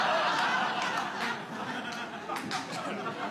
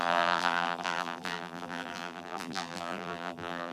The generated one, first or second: second